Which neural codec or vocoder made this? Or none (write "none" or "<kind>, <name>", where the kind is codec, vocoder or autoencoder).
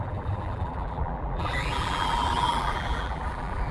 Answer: vocoder, BigVGAN v2